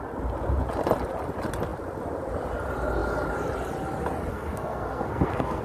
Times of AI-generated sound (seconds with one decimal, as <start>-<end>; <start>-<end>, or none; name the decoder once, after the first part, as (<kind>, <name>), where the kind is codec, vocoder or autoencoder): 4.3-5.6 (codec, SNAC)